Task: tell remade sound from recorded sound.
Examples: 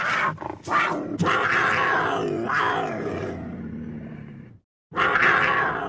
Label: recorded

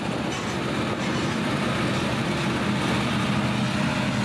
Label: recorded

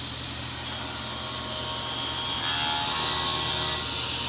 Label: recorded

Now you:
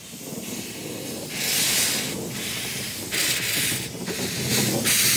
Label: recorded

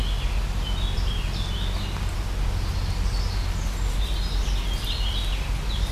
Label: recorded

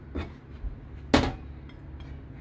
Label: recorded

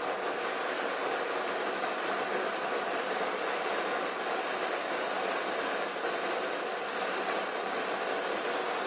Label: recorded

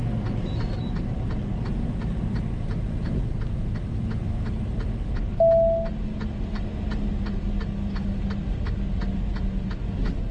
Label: recorded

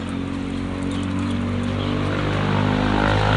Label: recorded